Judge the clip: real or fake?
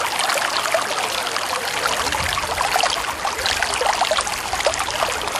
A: real